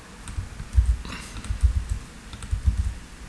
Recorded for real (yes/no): yes